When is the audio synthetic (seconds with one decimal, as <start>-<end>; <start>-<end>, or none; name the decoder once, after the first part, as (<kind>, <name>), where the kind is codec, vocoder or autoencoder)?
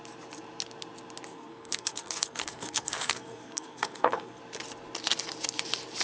1.3-4.4 (codec, SNAC)